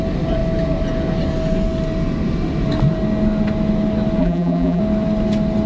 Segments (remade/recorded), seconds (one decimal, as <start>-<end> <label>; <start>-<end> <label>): 0.0-4.2 recorded; 4.2-4.8 remade; 4.8-5.7 recorded